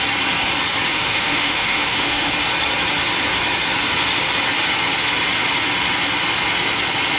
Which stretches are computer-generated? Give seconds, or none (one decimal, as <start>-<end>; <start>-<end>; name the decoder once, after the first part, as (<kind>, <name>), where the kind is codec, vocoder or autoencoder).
0.9-2.3 (autoencoder, DAC-VAE)